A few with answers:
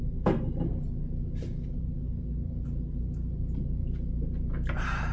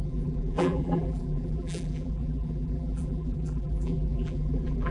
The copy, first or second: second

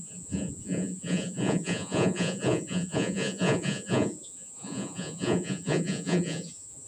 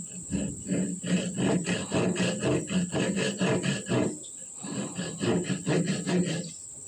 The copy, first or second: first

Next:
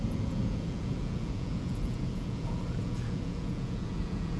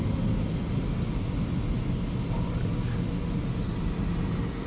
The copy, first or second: first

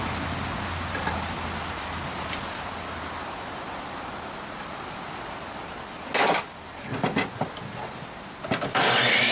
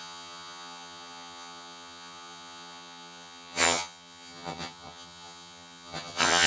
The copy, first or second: second